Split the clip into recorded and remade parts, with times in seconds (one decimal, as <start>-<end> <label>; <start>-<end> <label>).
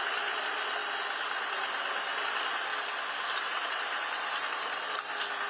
0.0-5.5 recorded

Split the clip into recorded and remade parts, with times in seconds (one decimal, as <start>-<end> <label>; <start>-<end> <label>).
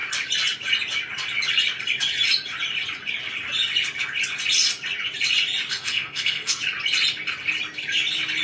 0.0-5.7 recorded; 5.7-6.6 remade; 6.6-8.4 recorded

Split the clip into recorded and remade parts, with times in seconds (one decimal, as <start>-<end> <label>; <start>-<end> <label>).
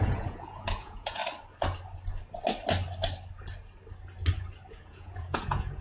0.0-1.2 remade; 1.2-4.7 recorded; 4.7-5.8 remade